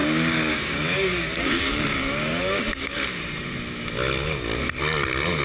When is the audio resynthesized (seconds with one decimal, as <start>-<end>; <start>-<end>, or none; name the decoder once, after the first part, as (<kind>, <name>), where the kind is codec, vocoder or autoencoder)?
0.0-3.2 (codec, DAC)